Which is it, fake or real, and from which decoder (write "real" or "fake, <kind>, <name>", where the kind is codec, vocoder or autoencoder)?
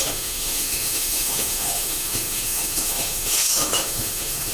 fake, autoencoder, DAC-VAE